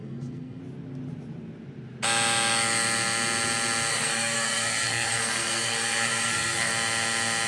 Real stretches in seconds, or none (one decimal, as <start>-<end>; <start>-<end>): 0.6-3.9; 6.7-7.5